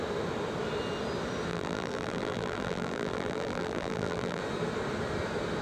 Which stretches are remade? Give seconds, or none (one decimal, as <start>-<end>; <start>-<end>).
1.5-4.4